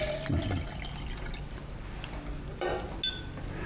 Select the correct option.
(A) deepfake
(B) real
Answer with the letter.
B